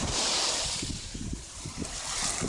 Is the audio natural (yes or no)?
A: no